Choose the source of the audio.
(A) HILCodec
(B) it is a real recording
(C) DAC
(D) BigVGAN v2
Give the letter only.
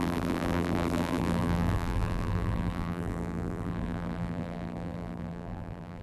D